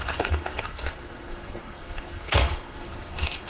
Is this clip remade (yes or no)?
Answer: yes